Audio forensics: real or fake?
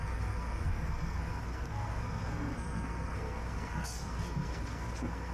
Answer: fake